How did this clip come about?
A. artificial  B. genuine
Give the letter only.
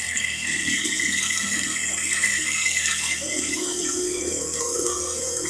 A